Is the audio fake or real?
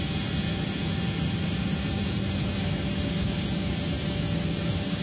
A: real